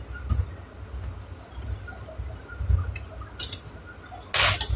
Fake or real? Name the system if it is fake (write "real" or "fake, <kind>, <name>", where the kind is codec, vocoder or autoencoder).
real